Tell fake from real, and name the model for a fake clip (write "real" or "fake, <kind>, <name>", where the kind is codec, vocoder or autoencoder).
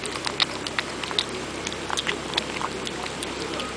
real